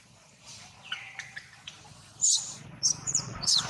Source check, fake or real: fake